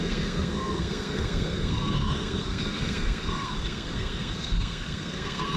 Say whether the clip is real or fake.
fake